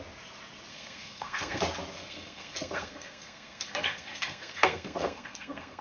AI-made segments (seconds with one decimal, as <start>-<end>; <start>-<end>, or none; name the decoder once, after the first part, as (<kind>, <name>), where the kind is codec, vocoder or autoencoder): 0.7-1.6 (codec, SNAC); 2.0-5.8